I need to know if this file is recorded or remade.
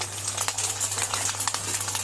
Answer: recorded